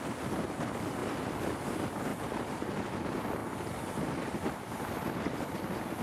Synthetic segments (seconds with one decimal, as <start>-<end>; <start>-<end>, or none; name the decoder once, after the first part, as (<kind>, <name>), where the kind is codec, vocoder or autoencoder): 2.1-2.7 (vocoder, BigVGAN v2)